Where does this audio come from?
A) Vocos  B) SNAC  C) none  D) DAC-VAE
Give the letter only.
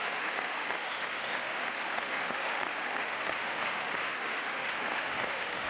D